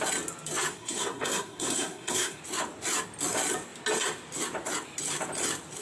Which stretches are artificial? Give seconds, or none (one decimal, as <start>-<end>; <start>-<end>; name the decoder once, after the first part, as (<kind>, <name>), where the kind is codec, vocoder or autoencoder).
0.7-2.4 (codec, SNAC)